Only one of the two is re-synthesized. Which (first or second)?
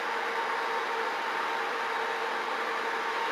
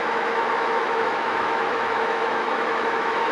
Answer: second